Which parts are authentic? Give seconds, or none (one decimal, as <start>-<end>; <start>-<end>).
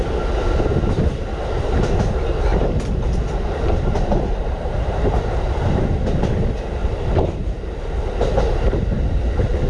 0.0-2.5; 5.8-6.8; 9.2-9.7